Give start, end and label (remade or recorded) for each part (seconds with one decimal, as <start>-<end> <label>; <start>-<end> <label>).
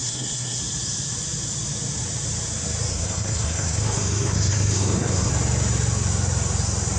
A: 0.0-0.6 remade; 0.6-2.9 recorded; 2.9-5.3 remade; 5.3-7.0 recorded